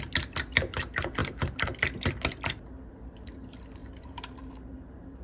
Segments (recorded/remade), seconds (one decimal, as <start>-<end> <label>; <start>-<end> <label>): 0.0-3.8 recorded; 3.8-5.2 remade